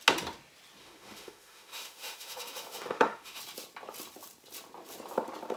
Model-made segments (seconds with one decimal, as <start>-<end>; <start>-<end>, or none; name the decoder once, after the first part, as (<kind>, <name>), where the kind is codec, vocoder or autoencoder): 0.8-3.4 (autoencoder, DAC-VAE)